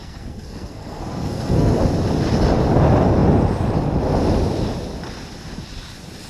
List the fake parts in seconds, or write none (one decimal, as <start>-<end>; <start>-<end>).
0.0-1.7